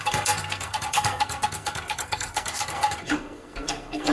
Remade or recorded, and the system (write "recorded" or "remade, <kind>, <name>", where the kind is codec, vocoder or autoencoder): remade, codec, SNAC